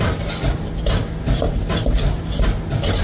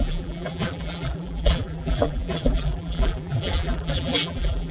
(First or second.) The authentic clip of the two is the first